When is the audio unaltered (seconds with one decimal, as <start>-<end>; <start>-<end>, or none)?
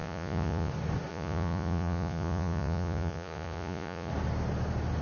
0.7-1.1; 4.1-5.0